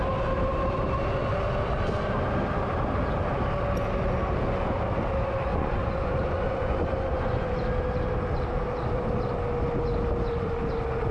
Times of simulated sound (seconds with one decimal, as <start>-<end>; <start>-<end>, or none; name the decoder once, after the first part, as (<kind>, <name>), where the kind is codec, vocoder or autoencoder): 5.5-7.5 (vocoder, Vocos)